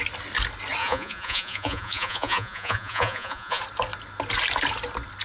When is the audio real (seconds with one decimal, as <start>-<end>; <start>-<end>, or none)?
0.0-0.8; 3.6-5.2